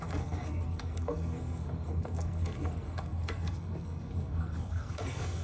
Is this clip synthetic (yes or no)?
yes